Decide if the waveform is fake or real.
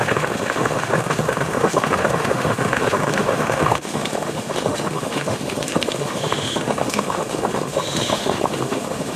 fake